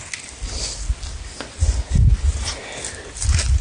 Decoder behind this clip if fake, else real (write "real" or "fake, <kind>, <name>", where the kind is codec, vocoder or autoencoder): real